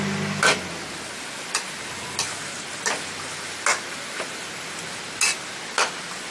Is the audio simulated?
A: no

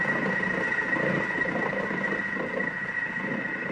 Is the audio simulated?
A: no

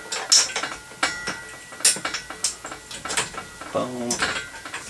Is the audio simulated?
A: no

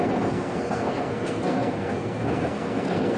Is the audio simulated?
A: yes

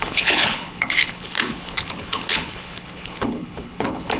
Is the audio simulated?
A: yes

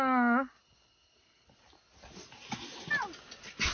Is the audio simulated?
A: no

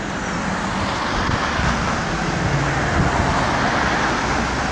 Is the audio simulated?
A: no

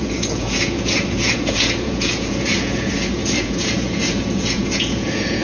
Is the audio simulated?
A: yes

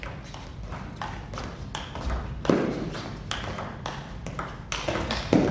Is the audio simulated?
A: no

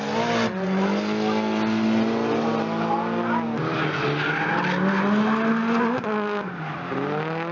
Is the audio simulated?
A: no